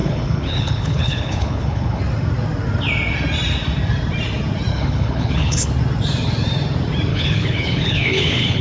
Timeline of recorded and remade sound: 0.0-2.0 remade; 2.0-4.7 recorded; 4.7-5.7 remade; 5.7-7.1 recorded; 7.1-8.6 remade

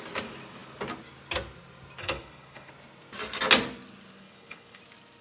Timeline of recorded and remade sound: 0.0-2.0 recorded; 2.0-2.7 remade; 2.7-4.2 recorded; 4.2-4.8 remade; 4.8-5.2 recorded